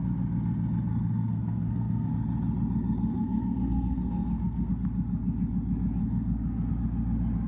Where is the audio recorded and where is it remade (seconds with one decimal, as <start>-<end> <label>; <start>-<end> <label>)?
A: 0.0-0.9 recorded; 0.9-2.1 remade; 2.1-3.1 recorded; 3.1-4.7 remade; 4.7-6.0 recorded; 6.0-6.7 remade; 6.7-7.5 recorded